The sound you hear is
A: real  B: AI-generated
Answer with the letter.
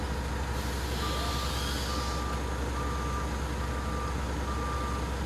A